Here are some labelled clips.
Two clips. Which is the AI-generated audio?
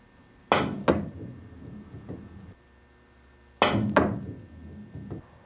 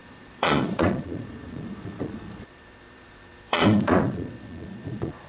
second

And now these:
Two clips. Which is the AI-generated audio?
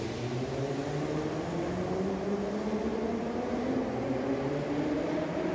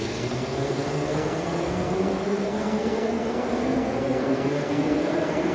second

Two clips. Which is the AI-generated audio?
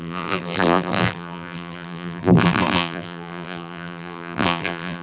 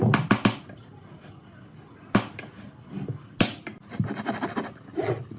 first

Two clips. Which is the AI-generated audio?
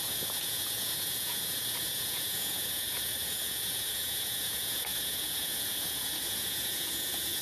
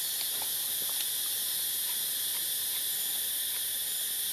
first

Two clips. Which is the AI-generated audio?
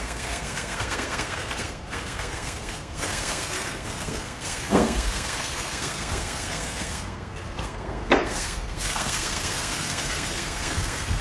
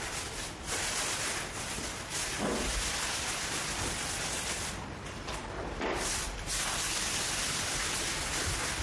first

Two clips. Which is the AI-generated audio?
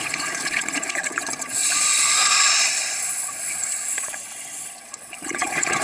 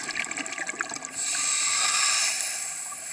first